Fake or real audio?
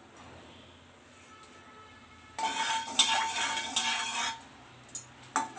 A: real